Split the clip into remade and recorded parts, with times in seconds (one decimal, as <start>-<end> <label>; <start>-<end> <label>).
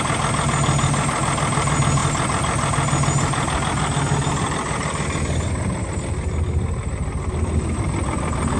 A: 0.0-8.6 recorded